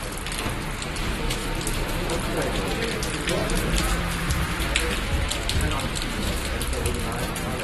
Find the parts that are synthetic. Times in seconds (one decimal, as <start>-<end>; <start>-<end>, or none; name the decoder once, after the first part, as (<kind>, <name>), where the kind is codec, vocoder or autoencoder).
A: 3.4-4.6 (vocoder, BigVGAN v2); 6.2-7.6